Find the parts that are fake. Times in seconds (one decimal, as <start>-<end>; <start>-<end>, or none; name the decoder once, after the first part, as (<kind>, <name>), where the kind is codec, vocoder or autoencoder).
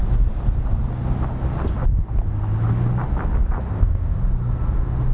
3.7-4.2 (codec, ZipCodec)